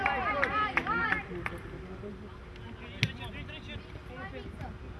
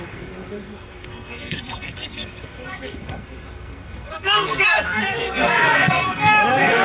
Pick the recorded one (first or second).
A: first